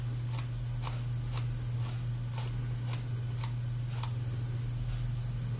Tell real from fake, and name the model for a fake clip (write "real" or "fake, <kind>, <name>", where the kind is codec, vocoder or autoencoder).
real